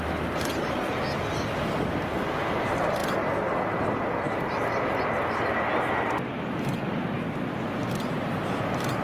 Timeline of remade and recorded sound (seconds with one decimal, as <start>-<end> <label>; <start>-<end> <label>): 0.0-9.0 recorded